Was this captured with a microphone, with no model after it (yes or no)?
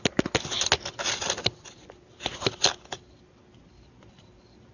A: yes